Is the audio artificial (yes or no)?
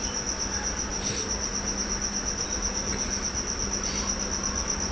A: no